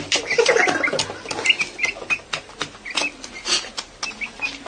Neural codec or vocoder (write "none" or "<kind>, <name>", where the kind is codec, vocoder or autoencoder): none